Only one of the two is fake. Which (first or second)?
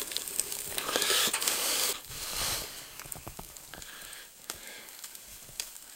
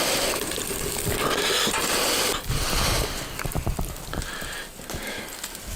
first